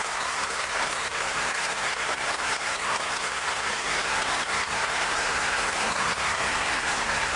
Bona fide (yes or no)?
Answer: no